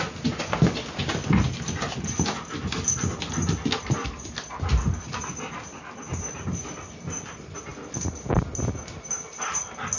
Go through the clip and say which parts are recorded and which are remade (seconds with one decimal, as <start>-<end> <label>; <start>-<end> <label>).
0.0-10.0 recorded